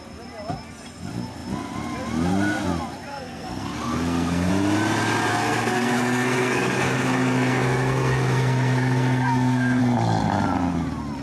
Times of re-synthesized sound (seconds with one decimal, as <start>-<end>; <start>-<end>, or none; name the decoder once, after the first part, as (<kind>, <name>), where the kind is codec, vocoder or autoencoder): 3.1-4.5 (codec, SNAC); 5.3-9.8